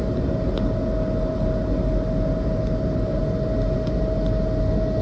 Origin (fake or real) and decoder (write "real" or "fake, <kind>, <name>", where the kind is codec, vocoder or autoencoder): real